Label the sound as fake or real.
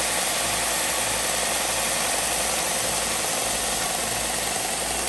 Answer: real